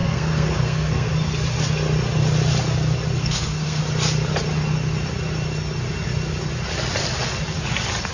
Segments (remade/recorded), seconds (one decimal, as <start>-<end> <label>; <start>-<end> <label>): 0.0-1.1 remade; 1.1-3.2 recorded; 3.2-3.8 remade; 3.8-8.1 recorded